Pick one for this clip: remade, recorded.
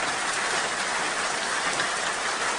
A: recorded